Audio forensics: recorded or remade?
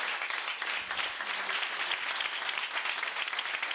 recorded